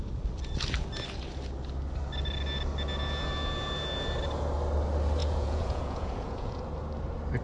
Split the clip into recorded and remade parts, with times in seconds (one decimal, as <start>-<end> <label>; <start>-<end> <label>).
0.0-5.2 recorded; 5.2-6.6 remade; 6.6-7.4 recorded